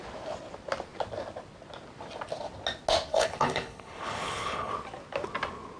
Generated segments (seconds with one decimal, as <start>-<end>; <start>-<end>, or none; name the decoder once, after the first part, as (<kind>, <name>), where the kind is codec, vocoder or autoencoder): 3.1-4.7 (codec, HILCodec)